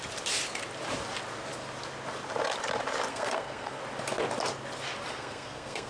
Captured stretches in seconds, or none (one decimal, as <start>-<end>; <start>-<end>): 0.0-3.1; 3.8-5.1